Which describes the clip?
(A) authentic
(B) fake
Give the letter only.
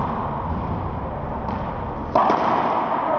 A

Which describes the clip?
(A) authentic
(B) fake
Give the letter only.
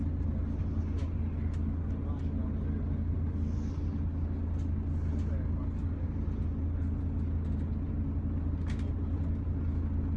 A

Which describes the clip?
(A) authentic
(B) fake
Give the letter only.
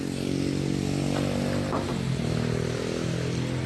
A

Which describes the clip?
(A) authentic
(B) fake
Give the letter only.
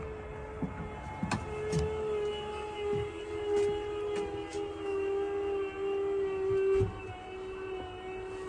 A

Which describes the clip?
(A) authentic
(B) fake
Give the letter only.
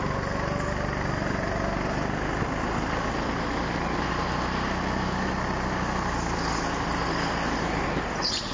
A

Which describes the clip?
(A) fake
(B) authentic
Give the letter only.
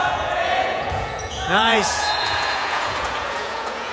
A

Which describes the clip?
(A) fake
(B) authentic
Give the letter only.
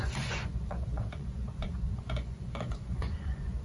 A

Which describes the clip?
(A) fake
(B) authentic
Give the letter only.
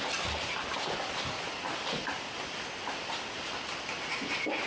B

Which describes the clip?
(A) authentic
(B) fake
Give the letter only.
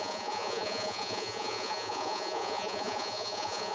B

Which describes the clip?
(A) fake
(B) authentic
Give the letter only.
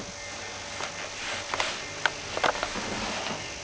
B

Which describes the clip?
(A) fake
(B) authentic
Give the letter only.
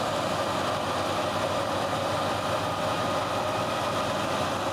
B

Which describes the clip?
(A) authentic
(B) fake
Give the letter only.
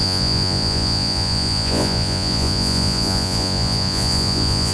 B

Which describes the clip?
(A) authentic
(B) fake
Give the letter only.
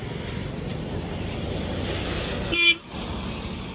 A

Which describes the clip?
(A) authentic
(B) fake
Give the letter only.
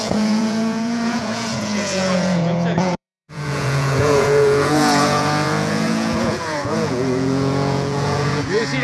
B